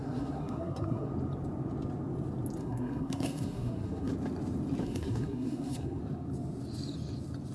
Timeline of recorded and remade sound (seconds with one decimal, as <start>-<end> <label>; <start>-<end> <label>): 0.0-1.1 remade; 1.1-2.6 recorded; 2.6-4.1 remade; 4.1-4.8 recorded; 4.8-6.0 remade; 6.0-7.5 recorded